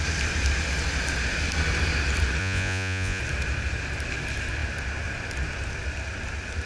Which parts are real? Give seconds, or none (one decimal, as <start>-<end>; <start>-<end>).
0.0-2.4; 3.2-6.7